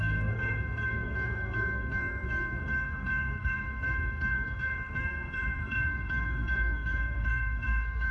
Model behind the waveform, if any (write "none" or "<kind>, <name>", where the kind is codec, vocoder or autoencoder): codec, SNAC